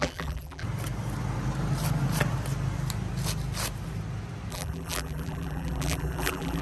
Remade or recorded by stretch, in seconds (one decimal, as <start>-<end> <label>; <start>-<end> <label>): 0.0-0.6 remade; 0.6-4.5 recorded; 4.5-6.6 remade